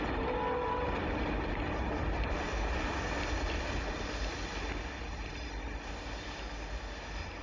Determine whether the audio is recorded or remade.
recorded